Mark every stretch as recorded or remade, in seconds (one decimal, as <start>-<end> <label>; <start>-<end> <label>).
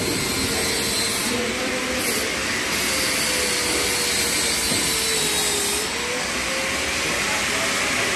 0.0-8.2 recorded